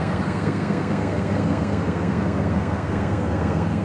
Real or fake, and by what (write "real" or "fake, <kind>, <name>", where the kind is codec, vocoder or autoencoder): fake, codec, SNAC